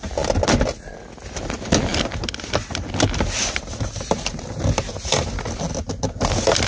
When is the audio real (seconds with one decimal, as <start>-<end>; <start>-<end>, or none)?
0.0-6.7